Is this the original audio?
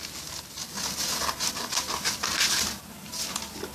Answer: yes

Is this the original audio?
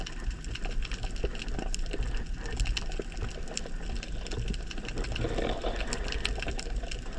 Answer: yes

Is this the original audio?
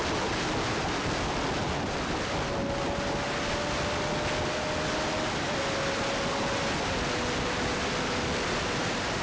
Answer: yes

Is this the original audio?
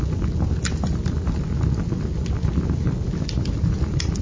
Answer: yes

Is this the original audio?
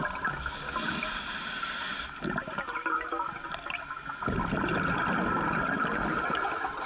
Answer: yes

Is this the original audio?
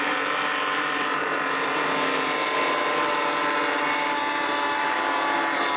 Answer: yes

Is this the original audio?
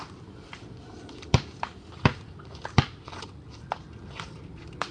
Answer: no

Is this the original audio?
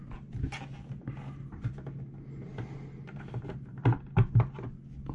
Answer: yes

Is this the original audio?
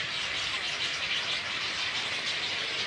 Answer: yes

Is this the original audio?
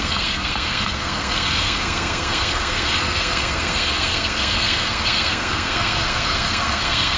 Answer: no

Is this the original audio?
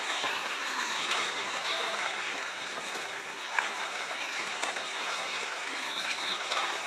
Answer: no